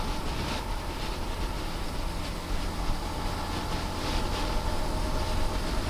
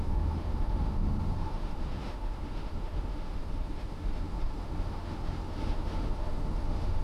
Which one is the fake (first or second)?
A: second